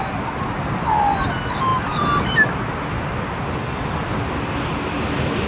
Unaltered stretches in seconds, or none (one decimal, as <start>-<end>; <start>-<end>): 0.0-5.5